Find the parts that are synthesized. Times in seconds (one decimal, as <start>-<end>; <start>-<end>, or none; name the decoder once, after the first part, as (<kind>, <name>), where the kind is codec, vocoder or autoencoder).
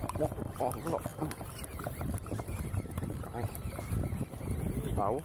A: 1.1-3.9 (vocoder, BigVGAN v2)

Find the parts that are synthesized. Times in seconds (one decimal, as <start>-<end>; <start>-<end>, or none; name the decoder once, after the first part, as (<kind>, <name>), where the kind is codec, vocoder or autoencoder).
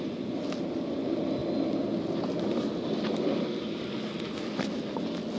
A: none